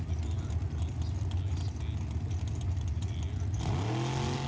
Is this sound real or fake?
real